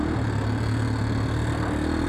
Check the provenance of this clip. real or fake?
real